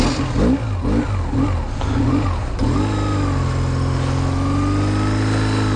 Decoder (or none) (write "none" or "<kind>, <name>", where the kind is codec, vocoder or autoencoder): none